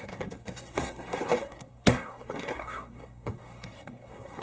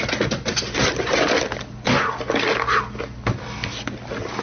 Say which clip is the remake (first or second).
first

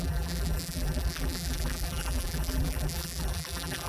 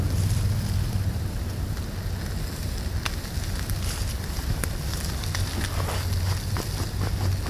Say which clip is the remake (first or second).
first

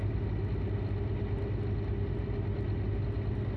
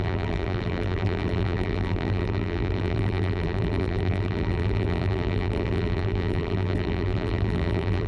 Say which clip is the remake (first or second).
second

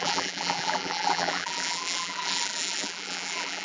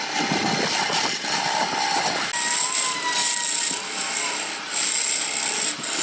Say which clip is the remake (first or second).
first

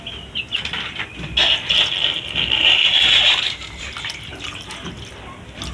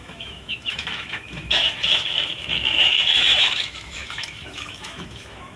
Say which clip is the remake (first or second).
second